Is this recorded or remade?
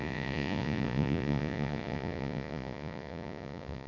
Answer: remade